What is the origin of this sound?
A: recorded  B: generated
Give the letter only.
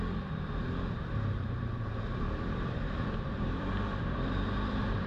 B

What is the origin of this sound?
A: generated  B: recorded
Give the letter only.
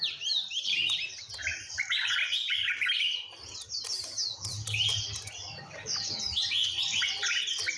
A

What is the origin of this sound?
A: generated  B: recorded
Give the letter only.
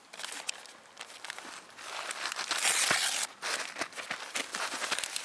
B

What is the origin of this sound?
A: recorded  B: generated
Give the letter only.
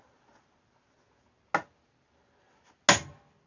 A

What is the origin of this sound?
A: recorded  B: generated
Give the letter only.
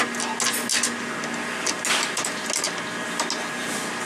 A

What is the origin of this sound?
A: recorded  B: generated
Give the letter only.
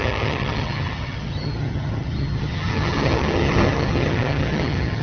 B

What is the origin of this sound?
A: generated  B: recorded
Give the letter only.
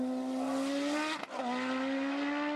B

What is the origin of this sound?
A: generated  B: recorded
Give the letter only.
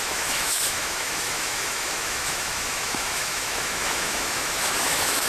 A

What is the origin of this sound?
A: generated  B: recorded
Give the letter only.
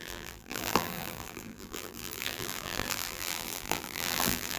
A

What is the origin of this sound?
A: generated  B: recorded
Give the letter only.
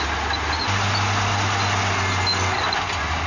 B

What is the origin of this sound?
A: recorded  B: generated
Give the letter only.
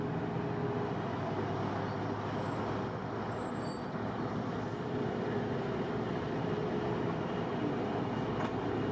A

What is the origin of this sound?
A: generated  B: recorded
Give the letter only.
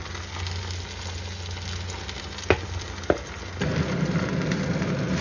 B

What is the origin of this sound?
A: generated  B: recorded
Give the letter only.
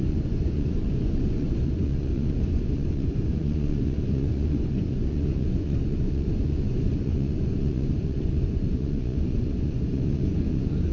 A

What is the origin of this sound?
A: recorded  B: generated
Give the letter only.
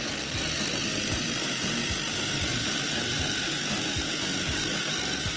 A